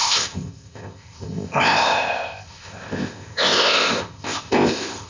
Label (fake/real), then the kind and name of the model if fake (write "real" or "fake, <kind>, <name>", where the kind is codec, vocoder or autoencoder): fake, codec, ZipCodec